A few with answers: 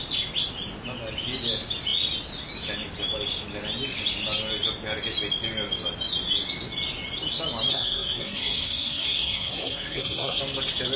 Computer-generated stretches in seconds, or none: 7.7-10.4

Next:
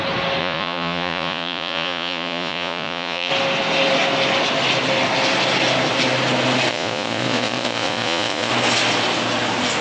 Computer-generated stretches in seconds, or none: 0.4-3.3; 6.7-8.5

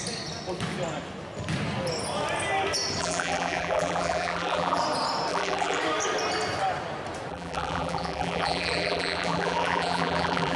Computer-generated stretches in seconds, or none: 3.0-4.8; 5.3-5.8; 7.3-10.6

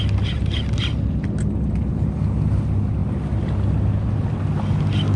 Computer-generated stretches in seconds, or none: none

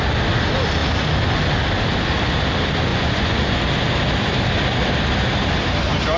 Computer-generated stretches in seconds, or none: 2.9-3.6

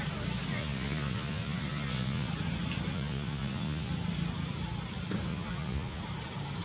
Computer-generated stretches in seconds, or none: 0.5-2.3; 2.9-3.9; 5.3-6.0

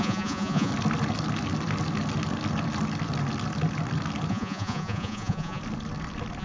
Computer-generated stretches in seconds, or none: 0.0-0.7; 4.3-5.6

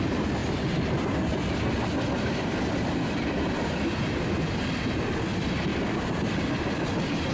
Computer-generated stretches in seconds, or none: 0.4-4.8